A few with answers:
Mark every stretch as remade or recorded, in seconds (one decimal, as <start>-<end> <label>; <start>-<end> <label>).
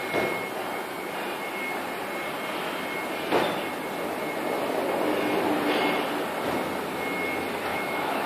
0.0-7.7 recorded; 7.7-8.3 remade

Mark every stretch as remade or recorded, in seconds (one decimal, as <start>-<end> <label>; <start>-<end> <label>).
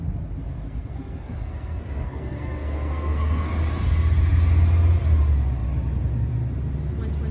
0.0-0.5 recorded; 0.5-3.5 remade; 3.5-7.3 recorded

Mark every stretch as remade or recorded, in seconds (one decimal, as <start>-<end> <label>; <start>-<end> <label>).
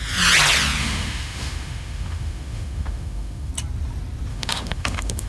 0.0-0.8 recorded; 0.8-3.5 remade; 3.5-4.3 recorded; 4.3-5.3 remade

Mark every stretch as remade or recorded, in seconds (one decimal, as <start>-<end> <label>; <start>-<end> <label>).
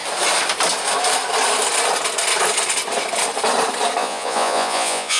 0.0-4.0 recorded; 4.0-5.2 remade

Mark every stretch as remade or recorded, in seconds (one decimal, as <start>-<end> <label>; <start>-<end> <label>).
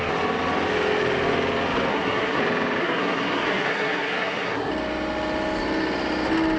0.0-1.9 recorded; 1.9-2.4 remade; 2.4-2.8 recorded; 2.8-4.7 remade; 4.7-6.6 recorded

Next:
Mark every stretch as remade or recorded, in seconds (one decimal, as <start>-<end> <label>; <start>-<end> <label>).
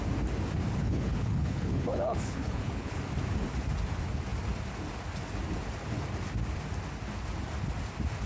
0.0-0.8 recorded; 0.8-3.0 remade; 3.0-8.3 recorded